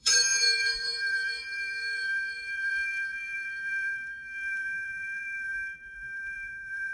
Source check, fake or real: fake